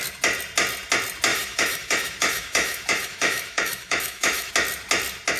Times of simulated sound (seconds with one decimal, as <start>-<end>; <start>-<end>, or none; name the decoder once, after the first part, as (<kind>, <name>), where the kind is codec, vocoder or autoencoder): 1.3-4.5 (autoencoder, DAC-VAE)